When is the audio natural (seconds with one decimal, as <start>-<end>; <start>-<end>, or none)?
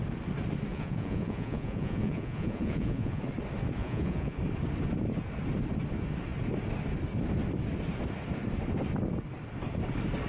0.0-0.7; 3.2-3.8; 4.4-10.3